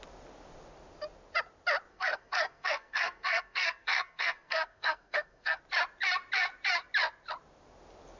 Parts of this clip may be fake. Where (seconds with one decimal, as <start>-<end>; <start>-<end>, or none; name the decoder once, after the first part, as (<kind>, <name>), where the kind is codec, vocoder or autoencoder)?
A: 1.9-5.6 (codec, SNAC)

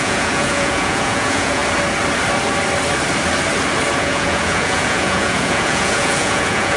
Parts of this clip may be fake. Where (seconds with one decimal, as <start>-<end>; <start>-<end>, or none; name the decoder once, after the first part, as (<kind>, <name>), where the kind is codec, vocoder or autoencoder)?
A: 0.0-1.6 (vocoder, Vocos); 4.0-6.8

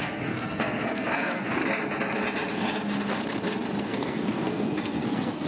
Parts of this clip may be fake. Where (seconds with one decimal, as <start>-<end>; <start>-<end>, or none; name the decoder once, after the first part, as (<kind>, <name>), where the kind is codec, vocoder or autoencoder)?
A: 0.0-1.6 (codec, SNAC); 3.8-5.5

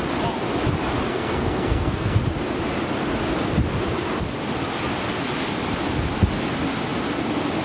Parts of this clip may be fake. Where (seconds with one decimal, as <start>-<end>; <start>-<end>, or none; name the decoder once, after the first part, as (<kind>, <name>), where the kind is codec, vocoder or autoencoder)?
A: 1.1-2.2 (codec, SNAC)

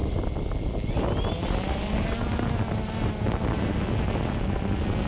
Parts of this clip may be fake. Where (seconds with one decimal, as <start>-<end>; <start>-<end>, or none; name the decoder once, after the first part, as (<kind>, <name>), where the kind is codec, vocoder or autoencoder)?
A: none

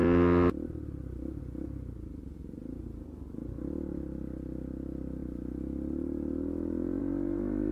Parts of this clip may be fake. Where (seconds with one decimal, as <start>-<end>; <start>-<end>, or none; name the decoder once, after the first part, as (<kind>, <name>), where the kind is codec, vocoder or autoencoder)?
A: none

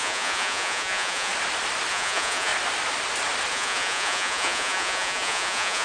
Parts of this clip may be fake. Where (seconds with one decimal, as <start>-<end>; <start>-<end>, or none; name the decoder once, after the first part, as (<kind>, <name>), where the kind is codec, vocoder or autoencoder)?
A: 0.0-1.3 (vocoder, Vocos); 1.9-2.5; 3.5-5.8